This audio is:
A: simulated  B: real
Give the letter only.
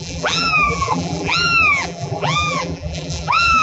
A